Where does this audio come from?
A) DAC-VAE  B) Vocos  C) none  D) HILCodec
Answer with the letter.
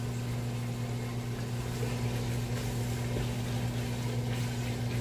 C